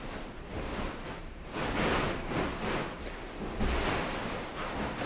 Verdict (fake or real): real